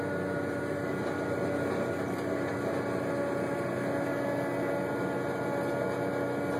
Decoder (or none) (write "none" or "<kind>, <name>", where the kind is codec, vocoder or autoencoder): none